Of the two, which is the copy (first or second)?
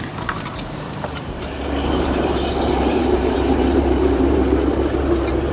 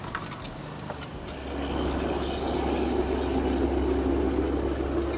first